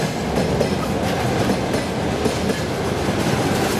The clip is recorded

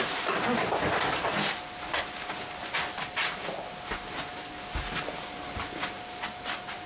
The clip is recorded